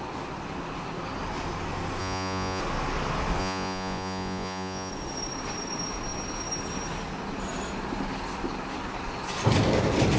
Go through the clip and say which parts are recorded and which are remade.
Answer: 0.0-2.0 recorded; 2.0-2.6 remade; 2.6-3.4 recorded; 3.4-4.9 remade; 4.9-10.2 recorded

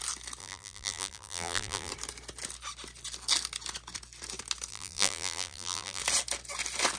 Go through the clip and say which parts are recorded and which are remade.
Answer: 0.0-0.4 recorded; 0.4-1.9 remade; 1.9-4.7 recorded; 4.7-6.0 remade; 6.0-7.0 recorded

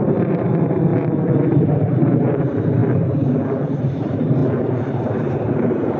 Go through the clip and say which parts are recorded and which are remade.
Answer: 0.0-0.9 remade; 0.9-1.6 recorded; 1.6-2.8 remade; 2.8-3.8 recorded; 3.8-4.4 remade; 4.4-4.9 recorded; 4.9-6.0 remade

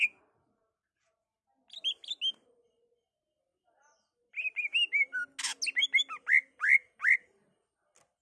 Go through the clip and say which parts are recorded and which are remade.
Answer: 0.0-8.2 recorded

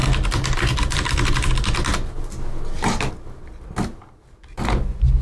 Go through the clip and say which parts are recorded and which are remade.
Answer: 0.0-5.2 recorded